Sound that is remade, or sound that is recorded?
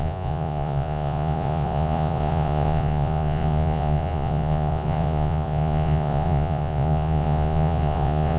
remade